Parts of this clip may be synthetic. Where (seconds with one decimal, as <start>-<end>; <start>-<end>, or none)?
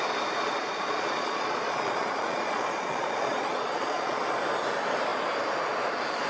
0.4-4.2